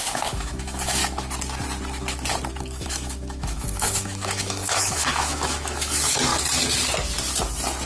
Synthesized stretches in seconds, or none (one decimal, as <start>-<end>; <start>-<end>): 0.0-1.0; 2.5-6.3